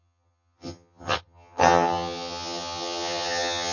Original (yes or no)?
no